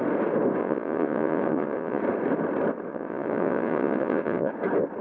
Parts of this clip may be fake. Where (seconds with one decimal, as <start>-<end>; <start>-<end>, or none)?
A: 0.6-2.0; 2.9-4.5